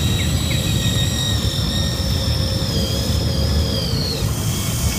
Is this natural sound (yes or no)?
yes